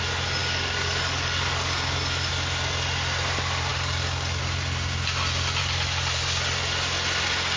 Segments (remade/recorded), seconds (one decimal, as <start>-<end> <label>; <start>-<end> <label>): 0.0-0.4 recorded; 0.4-2.3 remade; 2.3-3.7 recorded; 3.7-4.4 remade; 4.4-5.6 recorded; 5.6-6.2 remade; 6.2-7.6 recorded